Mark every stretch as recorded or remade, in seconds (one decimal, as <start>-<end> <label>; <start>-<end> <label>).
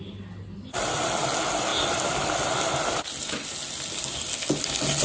0.0-5.0 recorded